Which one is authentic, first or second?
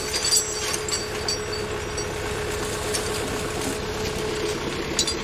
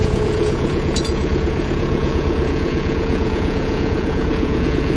first